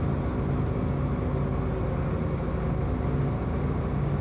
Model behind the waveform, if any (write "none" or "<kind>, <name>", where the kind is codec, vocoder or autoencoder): none